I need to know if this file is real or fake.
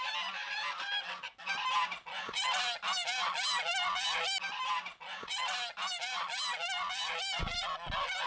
real